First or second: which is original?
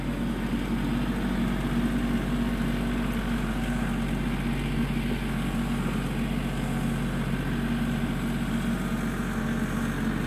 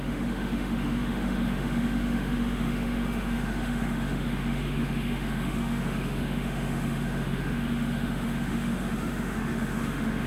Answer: first